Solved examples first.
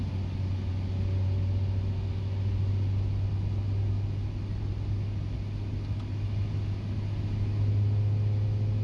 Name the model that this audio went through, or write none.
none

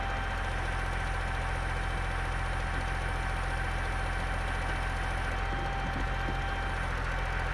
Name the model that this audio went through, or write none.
none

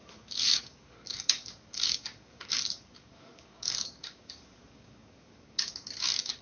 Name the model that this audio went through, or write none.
codec, DAC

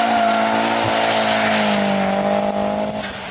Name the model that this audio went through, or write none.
none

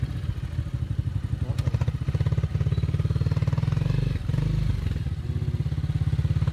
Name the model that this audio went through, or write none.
none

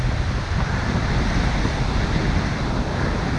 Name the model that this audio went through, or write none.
none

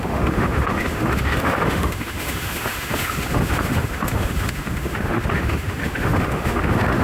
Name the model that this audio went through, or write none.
autoencoder, DAC-VAE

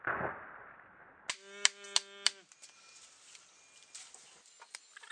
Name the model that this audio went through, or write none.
none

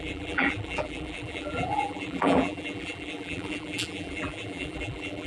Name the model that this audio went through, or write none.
vocoder, BigVGAN v2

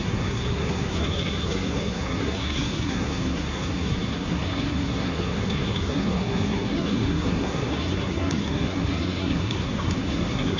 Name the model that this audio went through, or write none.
codec, SNAC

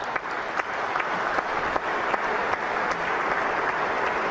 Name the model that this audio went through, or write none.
none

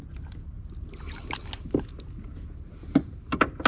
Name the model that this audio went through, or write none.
none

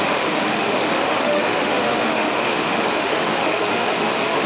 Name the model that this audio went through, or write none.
autoencoder, DAC-VAE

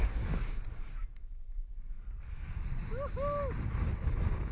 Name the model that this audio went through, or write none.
none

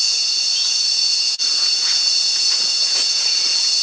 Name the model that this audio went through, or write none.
vocoder, Vocos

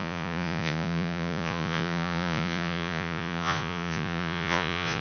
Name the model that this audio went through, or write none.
vocoder, Vocos